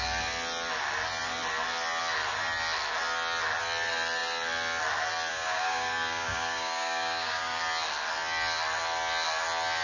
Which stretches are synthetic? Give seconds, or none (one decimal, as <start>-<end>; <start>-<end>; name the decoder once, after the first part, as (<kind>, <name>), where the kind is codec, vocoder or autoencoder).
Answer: 5.3-7.6 (codec, DAC)